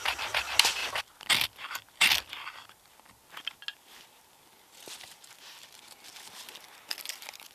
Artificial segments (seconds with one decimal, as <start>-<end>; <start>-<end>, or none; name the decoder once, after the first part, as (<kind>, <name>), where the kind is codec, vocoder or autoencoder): none